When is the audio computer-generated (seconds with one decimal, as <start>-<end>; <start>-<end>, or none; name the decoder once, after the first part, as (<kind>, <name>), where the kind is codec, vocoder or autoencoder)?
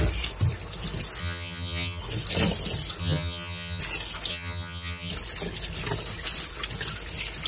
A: 1.2-2.0 (vocoder, HiFi-GAN); 3.0-3.8; 4.3-5.1